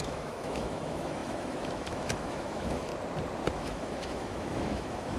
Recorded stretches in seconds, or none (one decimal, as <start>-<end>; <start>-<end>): 2.9-3.5